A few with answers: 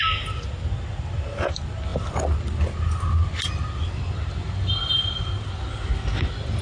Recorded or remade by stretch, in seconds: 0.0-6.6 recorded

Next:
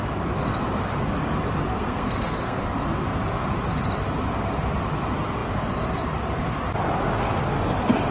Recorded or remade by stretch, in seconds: 0.0-1.7 recorded; 1.7-2.6 remade; 2.6-8.1 recorded

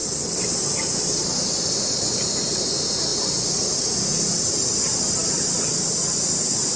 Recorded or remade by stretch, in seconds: 0.0-3.1 recorded; 3.1-5.7 remade; 5.7-6.8 recorded

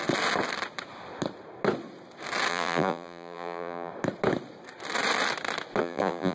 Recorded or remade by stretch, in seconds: 0.0-2.5 recorded; 2.5-3.9 remade; 3.9-5.8 recorded; 5.8-6.3 remade

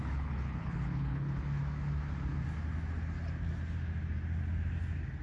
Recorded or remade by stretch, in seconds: 0.0-1.6 remade; 1.6-5.2 recorded

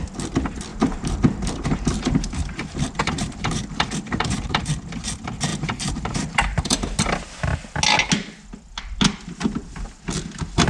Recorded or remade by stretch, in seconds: 0.0-0.7 recorded; 0.7-4.7 remade; 4.7-5.5 recorded; 5.5-7.0 remade; 7.0-10.7 recorded

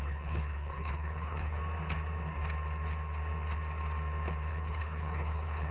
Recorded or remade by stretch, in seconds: 0.0-1.6 remade; 1.6-4.5 recorded; 4.5-5.7 remade